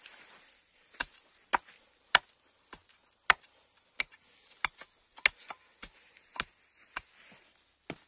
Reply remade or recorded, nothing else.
recorded